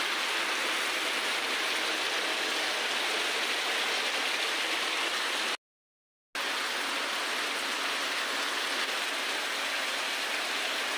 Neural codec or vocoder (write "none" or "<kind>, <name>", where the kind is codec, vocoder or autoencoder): none